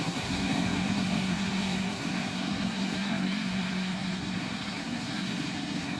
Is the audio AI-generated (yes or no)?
yes